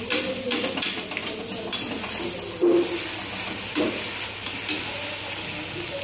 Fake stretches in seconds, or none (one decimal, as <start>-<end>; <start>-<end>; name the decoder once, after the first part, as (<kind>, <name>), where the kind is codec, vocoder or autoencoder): none